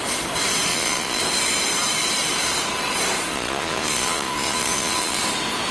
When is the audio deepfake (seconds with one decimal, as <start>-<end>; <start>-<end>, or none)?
0.7-1.2; 3.3-5.2